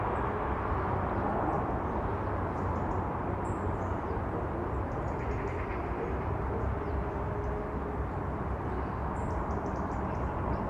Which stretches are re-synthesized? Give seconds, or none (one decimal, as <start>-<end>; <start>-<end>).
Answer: 2.1-7.2; 9.2-10.7